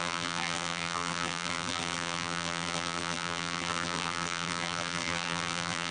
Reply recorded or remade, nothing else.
remade